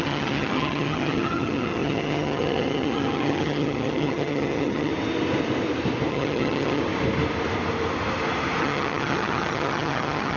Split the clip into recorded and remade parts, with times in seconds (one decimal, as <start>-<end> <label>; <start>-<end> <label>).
0.0-4.9 remade; 4.9-6.1 recorded; 6.1-6.8 remade; 6.8-8.6 recorded; 8.6-10.4 remade